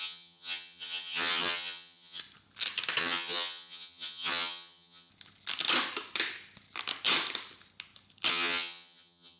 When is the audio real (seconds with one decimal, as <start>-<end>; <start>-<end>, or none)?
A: 2.2-3.0; 5.1-8.3